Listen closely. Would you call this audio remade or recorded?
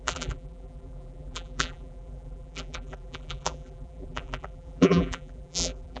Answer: remade